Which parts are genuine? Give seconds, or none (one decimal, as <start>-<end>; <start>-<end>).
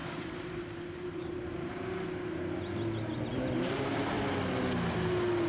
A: 1.7-3.3; 4.2-5.5